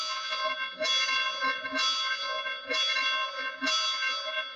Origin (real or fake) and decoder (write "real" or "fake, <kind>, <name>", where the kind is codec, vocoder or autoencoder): fake, vocoder, Vocos